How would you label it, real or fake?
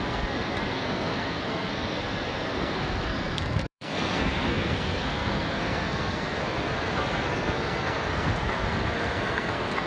fake